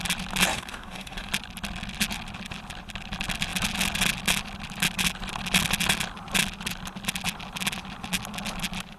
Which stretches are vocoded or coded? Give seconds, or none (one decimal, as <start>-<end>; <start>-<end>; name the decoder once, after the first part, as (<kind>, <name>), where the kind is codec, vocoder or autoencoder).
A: 0.5-1.3 (autoencoder, DAC-VAE)